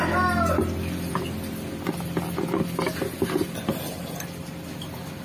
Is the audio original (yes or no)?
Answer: yes